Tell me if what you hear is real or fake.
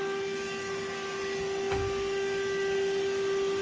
real